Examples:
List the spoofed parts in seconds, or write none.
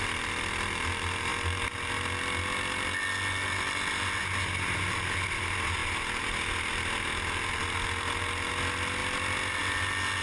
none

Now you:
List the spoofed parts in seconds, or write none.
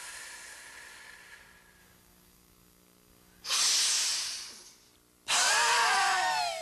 1.8-3.6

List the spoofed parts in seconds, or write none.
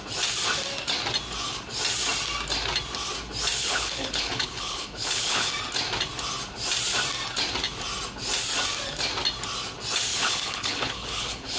3.6-5.5; 10.1-11.6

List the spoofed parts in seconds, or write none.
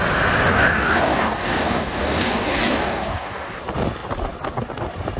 0.5-3.6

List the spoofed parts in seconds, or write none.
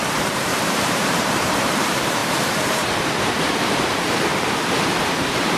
0.0-5.6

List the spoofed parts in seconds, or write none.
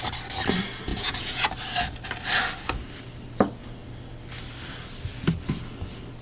0.9-1.5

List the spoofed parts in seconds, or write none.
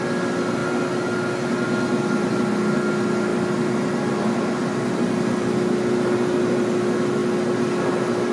none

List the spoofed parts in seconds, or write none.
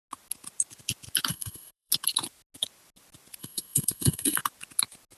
1.3-1.9; 3.4-4.4